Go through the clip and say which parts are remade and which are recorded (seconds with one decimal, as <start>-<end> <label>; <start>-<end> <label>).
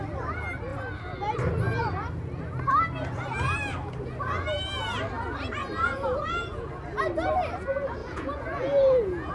0.0-5.6 recorded; 5.6-6.7 remade; 6.7-8.0 recorded; 8.0-9.3 remade